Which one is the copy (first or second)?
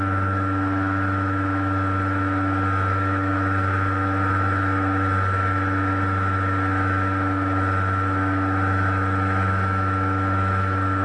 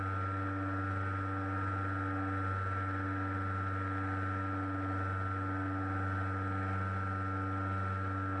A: first